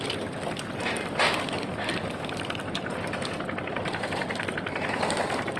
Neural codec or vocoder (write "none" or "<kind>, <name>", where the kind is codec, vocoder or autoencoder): none